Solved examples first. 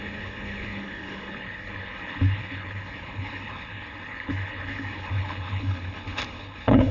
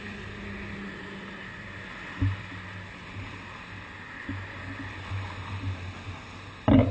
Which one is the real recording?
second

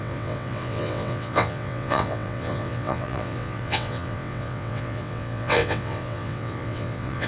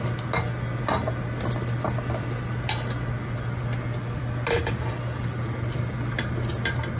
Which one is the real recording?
second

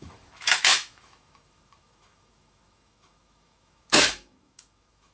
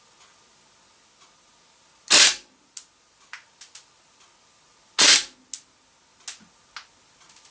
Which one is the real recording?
second